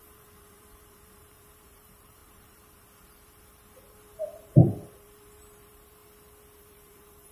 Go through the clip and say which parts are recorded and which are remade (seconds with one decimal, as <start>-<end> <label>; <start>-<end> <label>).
0.0-6.0 remade; 6.0-6.6 recorded; 6.6-7.3 remade